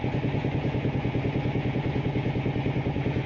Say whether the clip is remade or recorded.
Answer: remade